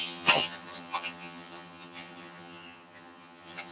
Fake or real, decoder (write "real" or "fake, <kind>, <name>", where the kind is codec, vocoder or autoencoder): fake, vocoder, HiFi-GAN